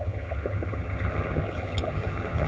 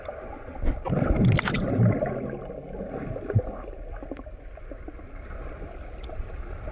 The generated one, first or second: first